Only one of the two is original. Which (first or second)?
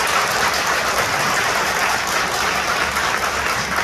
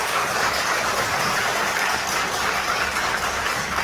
first